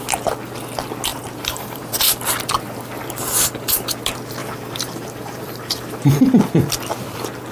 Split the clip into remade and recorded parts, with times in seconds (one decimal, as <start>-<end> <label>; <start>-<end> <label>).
0.0-1.1 recorded; 1.1-1.9 remade; 1.9-4.4 recorded; 4.4-6.3 remade; 6.3-7.5 recorded